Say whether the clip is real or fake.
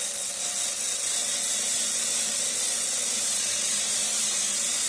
real